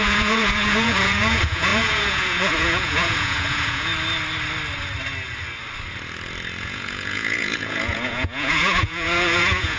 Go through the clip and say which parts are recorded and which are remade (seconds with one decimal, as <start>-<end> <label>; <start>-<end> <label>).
0.0-3.9 remade; 3.9-6.6 recorded; 6.6-9.8 remade